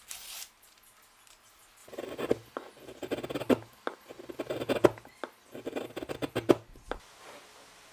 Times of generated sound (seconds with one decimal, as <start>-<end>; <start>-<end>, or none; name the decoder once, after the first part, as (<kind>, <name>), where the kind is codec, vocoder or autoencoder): none

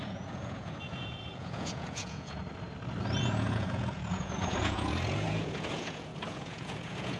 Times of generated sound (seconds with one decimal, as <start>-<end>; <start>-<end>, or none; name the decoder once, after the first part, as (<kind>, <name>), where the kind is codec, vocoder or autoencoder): 0.0-2.4 (vocoder, Vocos); 3.2-7.2

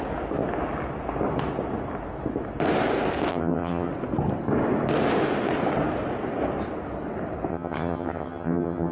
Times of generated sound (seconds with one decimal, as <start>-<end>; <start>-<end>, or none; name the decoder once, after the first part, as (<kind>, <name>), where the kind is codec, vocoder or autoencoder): 3.3-3.9 (vocoder, HiFi-GAN); 7.5-8.9

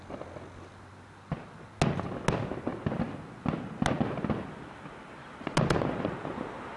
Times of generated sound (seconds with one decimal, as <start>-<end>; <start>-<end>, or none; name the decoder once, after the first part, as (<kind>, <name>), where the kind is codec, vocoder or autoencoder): none

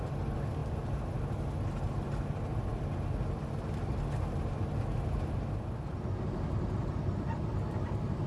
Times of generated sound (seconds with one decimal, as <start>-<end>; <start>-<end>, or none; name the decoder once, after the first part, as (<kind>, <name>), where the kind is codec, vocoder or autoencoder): none